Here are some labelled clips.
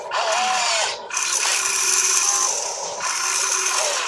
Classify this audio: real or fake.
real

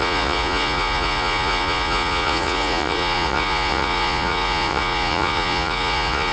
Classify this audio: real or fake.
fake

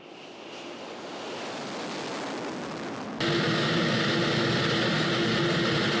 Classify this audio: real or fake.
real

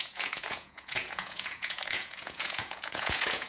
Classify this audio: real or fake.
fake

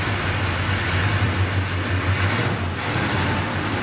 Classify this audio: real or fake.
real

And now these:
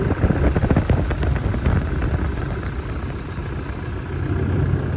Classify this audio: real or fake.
real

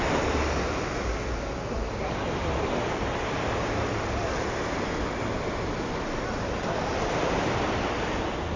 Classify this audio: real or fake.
real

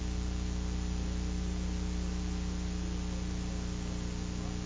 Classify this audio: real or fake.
real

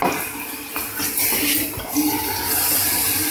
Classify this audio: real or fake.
real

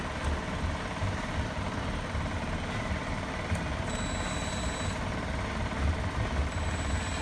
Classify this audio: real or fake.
real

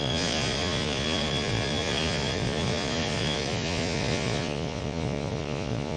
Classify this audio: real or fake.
fake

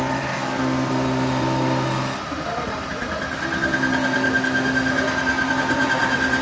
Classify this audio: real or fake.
real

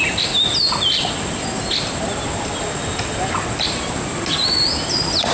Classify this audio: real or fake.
real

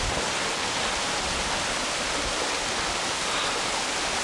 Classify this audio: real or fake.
real